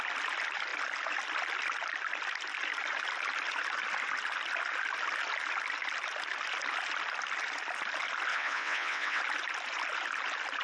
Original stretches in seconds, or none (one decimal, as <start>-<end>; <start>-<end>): 0.0-8.3; 9.2-10.6